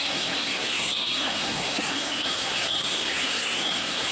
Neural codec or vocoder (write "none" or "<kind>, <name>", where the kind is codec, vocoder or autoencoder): codec, SNAC